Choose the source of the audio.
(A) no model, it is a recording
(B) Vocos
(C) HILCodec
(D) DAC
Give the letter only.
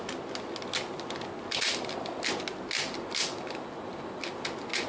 A